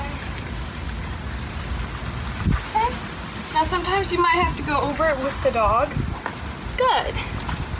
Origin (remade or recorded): recorded